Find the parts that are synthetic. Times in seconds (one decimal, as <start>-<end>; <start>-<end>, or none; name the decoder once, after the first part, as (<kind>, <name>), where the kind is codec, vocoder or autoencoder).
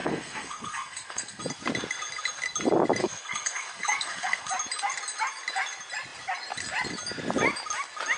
0.0-1.4 (codec, SNAC); 3.0-4.5